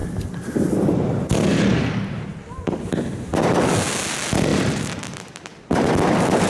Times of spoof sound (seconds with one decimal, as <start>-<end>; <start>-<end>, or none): 0.0-0.5; 4.5-5.0